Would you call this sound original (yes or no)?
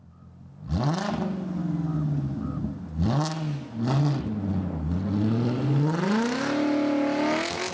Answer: yes